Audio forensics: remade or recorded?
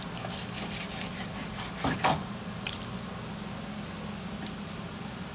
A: recorded